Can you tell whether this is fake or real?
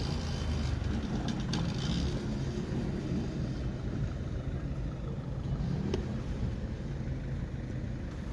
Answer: real